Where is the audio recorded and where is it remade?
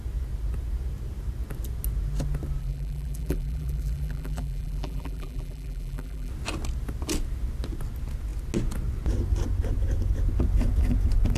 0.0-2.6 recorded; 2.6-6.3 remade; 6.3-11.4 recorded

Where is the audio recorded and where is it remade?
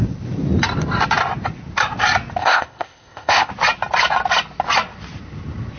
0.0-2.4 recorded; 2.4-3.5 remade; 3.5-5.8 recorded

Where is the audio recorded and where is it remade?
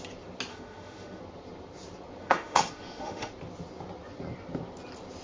0.0-0.5 recorded; 0.5-1.2 remade; 1.2-2.2 recorded; 2.2-3.3 remade; 3.3-5.2 recorded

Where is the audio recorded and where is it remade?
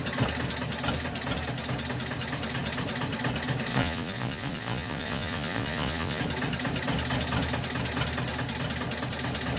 0.0-3.7 recorded; 3.7-6.2 remade; 6.2-9.6 recorded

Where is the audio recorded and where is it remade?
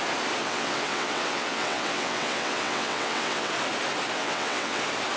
0.0-0.4 recorded; 0.4-3.5 remade; 3.5-4.2 recorded; 4.2-4.8 remade; 4.8-5.2 recorded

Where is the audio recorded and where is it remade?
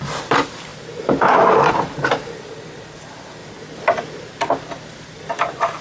0.0-3.4 remade; 3.4-5.3 recorded; 5.3-5.8 remade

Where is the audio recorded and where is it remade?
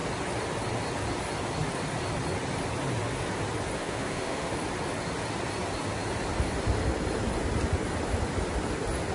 0.0-3.8 recorded; 3.8-4.5 remade; 4.5-9.1 recorded